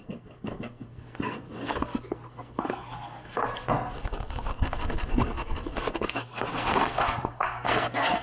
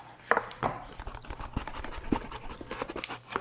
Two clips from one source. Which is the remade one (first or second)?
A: first